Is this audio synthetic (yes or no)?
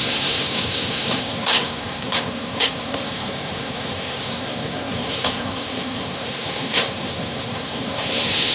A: yes